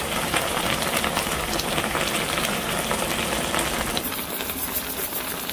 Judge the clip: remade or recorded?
remade